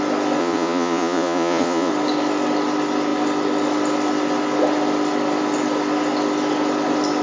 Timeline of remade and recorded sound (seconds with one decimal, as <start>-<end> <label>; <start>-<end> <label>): 0.0-0.4 recorded; 0.4-1.9 remade; 1.9-7.2 recorded